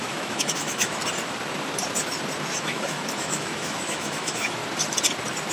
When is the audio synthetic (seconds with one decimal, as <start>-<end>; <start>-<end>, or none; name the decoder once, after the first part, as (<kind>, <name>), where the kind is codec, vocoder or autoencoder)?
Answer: 0.0-1.0 (autoencoder, DAC-VAE); 2.6-4.6